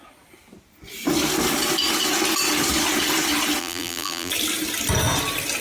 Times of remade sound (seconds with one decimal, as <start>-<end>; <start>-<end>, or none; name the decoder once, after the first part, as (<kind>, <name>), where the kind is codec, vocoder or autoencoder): 3.6-4.3 (vocoder, BigVGAN v2)